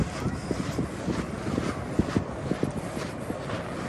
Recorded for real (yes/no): yes